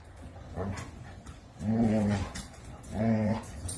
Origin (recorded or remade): remade